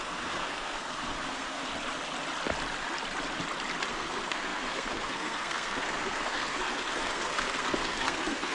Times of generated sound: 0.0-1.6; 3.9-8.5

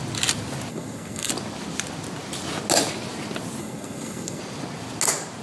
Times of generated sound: 0.7-1.3; 3.6-4.4

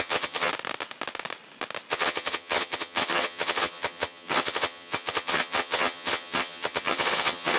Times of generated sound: 0.0-0.5; 1.9-7.6

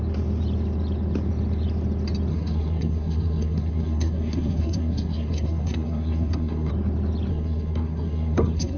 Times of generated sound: 2.3-6.7; 7.3-8.8